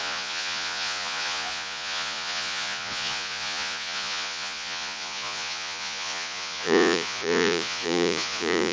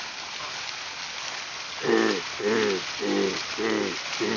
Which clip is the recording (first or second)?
second